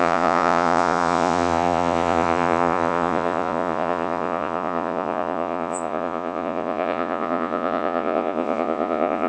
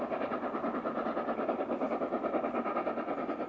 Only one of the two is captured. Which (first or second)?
second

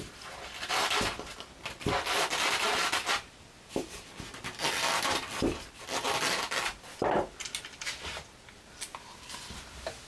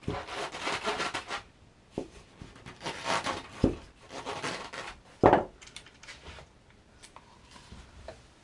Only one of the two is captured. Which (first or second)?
first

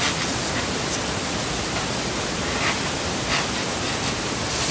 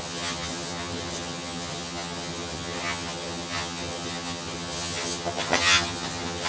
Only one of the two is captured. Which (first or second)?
first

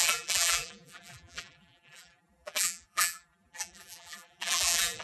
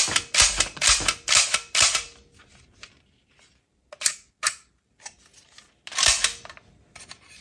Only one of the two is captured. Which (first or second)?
second